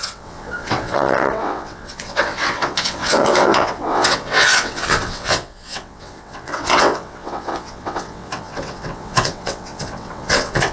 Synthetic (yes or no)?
yes